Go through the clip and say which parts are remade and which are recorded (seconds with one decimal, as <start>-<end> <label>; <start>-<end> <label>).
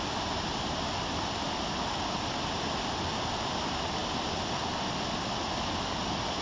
0.0-6.4 recorded